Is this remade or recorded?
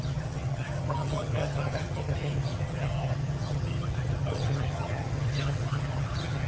remade